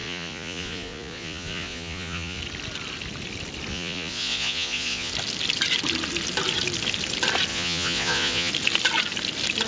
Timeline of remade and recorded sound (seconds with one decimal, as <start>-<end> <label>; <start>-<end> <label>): 0.0-2.4 remade; 2.4-3.7 recorded; 3.7-5.1 remade; 5.1-7.5 recorded; 7.5-8.5 remade; 8.5-9.7 recorded